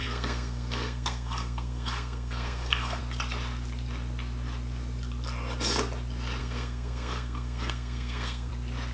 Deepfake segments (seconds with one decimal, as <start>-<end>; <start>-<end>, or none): 0.0-3.0; 6.4-8.5